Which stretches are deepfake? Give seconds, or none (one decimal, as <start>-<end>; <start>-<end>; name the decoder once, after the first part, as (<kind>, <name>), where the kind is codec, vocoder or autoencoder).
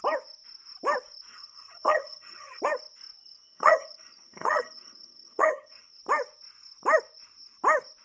1.3-2.6 (vocoder, HiFi-GAN); 3.2-6.0